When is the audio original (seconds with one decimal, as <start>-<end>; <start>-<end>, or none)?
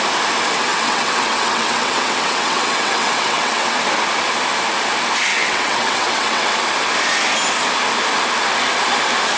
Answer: 0.0-0.7; 3.8-5.3; 6.5-9.4